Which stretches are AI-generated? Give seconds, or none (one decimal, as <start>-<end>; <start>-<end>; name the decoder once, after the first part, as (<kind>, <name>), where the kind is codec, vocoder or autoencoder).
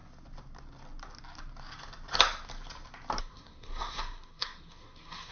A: 3.2-5.3 (codec, SNAC)